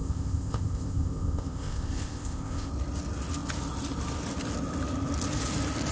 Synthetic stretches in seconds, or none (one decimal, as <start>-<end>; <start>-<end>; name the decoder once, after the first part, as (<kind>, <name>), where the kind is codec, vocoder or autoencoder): 0.0-2.7 (codec, ZipCodec)